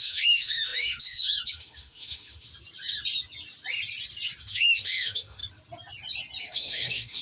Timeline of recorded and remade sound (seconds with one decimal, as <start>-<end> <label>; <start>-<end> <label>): 0.0-2.5 remade; 2.5-4.4 recorded; 4.4-5.4 remade; 5.4-6.4 recorded; 6.4-7.2 remade